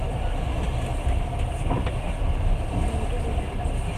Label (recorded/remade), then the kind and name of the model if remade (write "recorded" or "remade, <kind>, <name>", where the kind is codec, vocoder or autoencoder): recorded